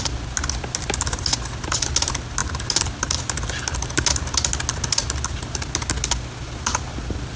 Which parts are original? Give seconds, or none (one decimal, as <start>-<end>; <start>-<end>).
0.0-7.4